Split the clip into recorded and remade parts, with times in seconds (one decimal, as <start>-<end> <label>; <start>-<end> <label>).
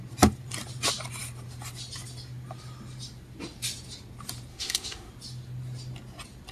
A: 0.0-4.5 recorded; 4.5-5.1 remade; 5.1-6.5 recorded